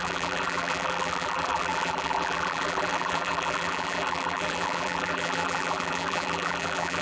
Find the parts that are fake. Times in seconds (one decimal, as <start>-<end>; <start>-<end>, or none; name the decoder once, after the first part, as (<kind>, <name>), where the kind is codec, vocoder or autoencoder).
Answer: 0.0-7.0 (vocoder, BigVGAN v2)